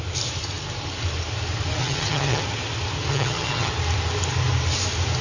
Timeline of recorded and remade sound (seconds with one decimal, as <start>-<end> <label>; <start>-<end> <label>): 0.0-1.8 recorded; 1.8-2.4 remade; 2.4-3.1 recorded; 3.1-3.7 remade; 3.7-5.2 recorded